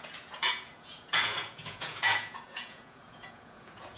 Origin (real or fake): fake